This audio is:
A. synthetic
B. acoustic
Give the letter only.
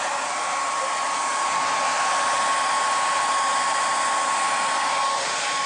B